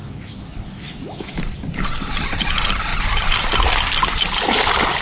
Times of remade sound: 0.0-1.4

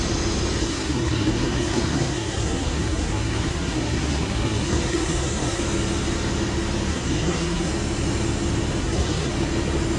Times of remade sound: 0.6-5.6; 6.9-7.7; 8.8-9.3

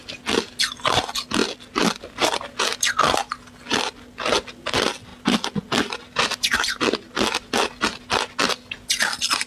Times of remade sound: none

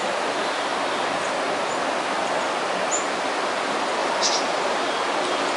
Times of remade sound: 4.0-4.9

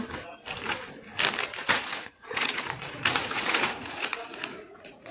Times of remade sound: 1.6-5.1

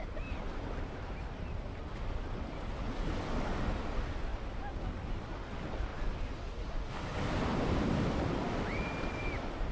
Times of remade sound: none

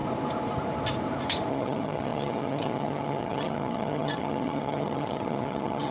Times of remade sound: 1.5-5.9

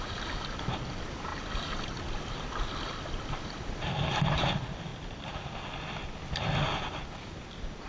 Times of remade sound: none